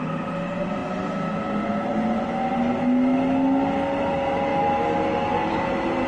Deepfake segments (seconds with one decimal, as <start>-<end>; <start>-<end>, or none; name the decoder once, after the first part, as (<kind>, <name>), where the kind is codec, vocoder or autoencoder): none